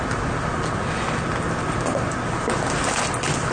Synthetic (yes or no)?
no